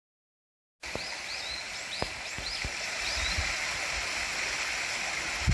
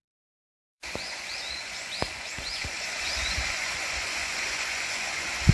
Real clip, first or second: first